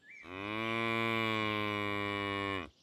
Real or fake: real